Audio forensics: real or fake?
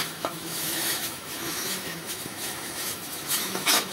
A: fake